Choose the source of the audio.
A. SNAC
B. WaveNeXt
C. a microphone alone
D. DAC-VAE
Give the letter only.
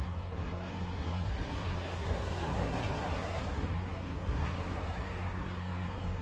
A